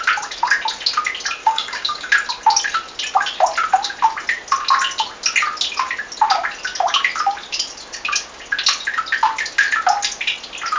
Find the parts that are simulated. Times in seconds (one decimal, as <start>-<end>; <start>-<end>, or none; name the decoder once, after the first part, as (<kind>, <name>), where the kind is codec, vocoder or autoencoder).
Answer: 1.4-2.1 (codec, DAC)